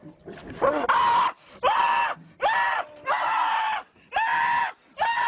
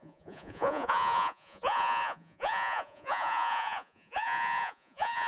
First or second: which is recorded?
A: first